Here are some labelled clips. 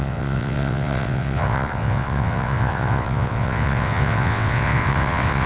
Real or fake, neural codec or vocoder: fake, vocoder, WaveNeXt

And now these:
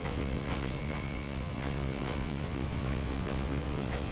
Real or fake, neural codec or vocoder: fake, vocoder, WaveNeXt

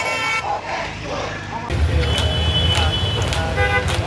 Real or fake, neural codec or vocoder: real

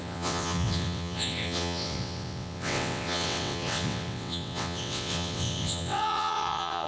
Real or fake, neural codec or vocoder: fake, vocoder, WaveNeXt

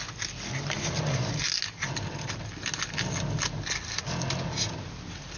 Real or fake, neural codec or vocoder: real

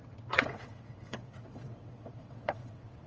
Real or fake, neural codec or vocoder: fake, vocoder, WaveNeXt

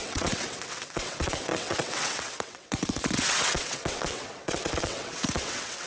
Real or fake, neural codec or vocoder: fake, vocoder, WaveNeXt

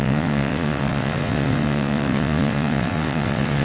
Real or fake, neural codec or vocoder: fake, vocoder, WaveNeXt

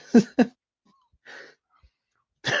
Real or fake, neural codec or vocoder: real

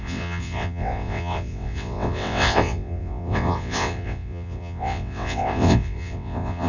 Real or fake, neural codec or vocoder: fake, vocoder, WaveNeXt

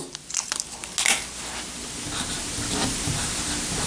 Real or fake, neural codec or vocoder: real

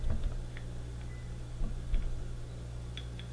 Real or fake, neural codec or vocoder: real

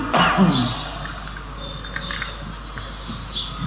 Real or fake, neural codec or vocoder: real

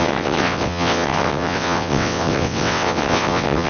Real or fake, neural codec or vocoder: fake, vocoder, WaveNeXt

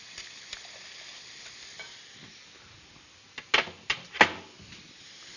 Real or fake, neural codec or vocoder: real